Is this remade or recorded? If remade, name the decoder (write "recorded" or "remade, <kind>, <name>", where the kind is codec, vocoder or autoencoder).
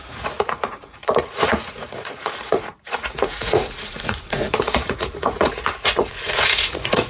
remade, vocoder, Vocos